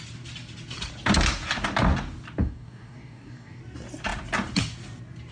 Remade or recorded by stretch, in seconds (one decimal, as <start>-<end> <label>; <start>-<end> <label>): 0.0-2.4 recorded; 2.4-3.6 remade; 3.6-5.3 recorded